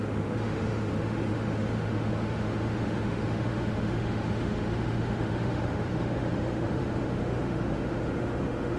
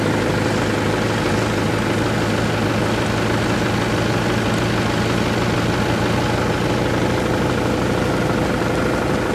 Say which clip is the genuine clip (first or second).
second